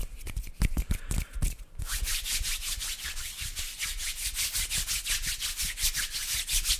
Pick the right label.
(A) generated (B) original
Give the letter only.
B